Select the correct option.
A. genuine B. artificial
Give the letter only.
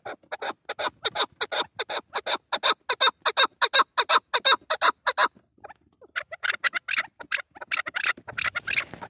A